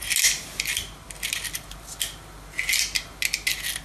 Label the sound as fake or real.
real